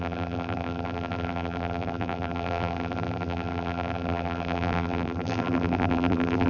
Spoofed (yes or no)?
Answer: yes